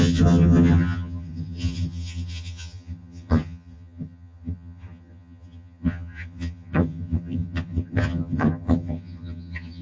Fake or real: fake